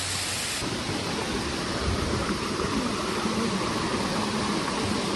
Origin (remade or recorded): recorded